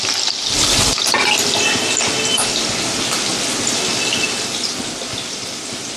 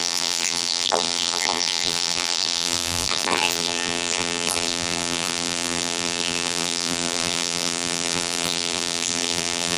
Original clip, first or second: first